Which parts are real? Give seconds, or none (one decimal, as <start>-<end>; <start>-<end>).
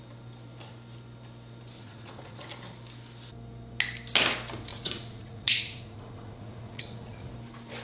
0.0-1.8; 2.4-4.7; 7.3-7.8